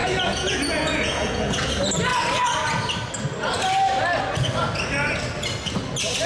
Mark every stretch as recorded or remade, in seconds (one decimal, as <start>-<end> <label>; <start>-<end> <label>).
0.0-1.7 remade; 1.7-6.3 recorded